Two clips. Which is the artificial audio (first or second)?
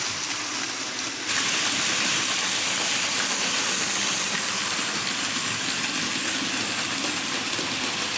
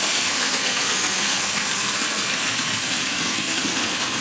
second